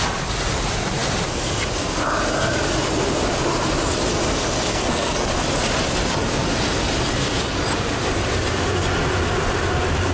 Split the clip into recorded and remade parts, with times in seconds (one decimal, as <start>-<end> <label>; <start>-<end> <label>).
0.0-4.7 recorded; 4.7-5.3 remade; 5.3-10.1 recorded